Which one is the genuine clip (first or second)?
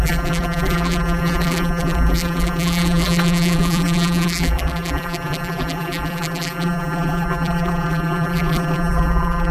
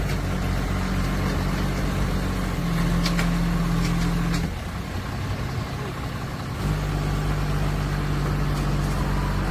second